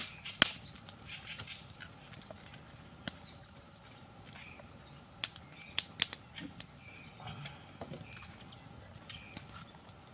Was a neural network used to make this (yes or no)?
no